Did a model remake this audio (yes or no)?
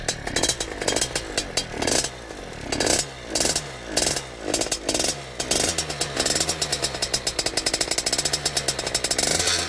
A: no